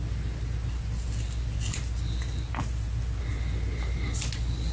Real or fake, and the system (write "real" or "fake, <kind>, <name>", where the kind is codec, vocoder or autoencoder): real